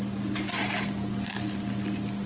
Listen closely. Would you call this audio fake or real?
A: real